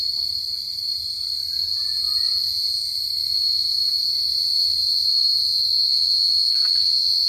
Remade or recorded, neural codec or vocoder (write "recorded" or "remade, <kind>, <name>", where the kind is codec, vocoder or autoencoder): remade, vocoder, BigVGAN v2